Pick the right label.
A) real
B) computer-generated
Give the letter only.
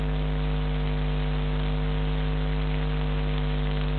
A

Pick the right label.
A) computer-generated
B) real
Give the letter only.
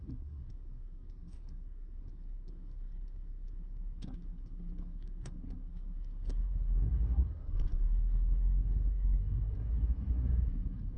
A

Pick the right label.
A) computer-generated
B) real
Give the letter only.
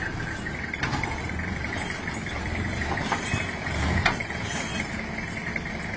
B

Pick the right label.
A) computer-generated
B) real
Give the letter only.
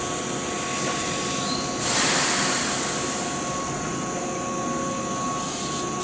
B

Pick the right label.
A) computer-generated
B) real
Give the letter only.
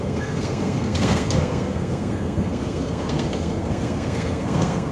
A